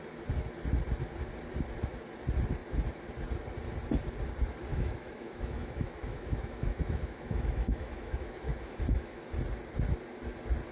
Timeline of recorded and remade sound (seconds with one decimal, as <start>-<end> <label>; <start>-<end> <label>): 0.0-4.7 recorded; 4.7-9.2 remade; 9.2-10.7 recorded